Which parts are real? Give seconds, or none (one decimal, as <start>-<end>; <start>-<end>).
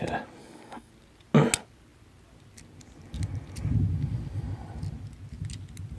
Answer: 0.0-0.4; 0.9-6.0